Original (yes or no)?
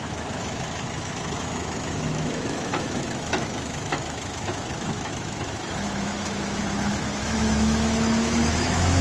no